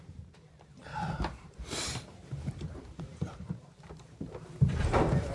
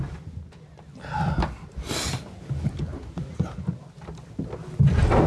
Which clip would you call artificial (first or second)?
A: first